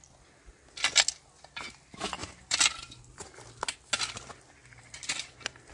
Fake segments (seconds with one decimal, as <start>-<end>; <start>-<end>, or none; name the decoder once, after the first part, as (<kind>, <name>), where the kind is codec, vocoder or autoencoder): 2.2-3.0 (vocoder, BigVGAN v2); 4.6-5.7